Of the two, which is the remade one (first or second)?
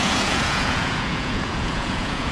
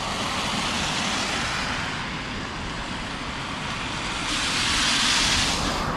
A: first